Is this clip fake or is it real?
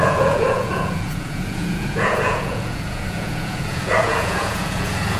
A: fake